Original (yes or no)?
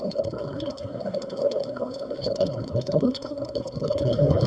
no